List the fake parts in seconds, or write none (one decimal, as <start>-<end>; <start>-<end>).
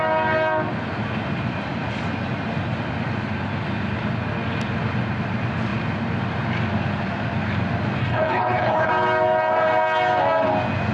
8.0-8.9